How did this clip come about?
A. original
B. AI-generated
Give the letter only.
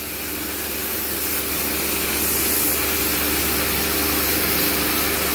A